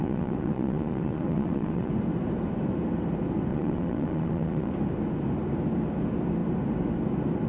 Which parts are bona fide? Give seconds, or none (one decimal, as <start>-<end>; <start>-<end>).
1.9-3.5; 4.7-7.5